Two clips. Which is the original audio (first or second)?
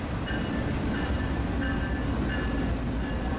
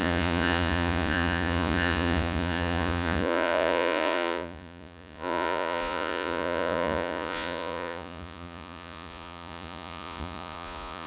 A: first